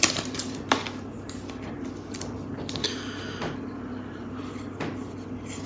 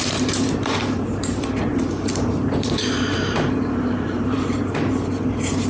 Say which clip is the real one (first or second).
first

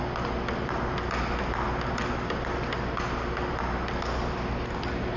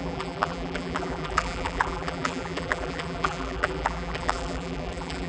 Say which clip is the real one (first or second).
first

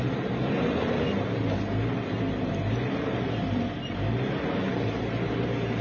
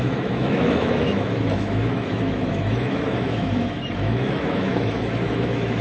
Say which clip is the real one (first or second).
first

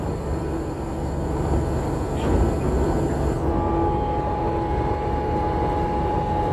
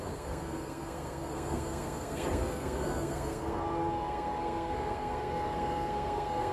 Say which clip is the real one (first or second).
first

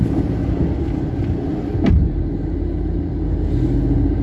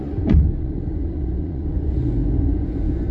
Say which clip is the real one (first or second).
first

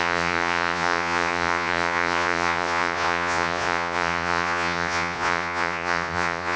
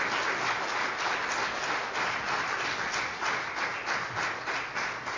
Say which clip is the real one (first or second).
second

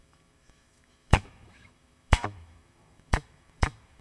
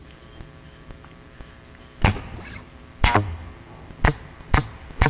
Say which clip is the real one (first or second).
second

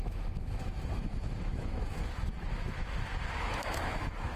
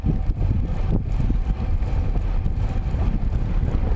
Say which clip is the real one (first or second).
second